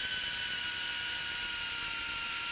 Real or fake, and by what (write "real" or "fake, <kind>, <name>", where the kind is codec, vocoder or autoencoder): real